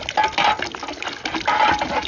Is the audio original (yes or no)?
yes